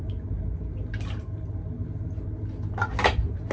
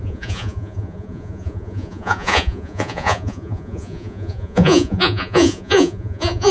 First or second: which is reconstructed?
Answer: second